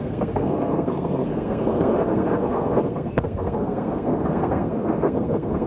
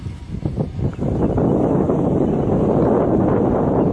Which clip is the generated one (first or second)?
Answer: first